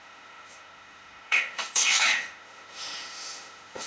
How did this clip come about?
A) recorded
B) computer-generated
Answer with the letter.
B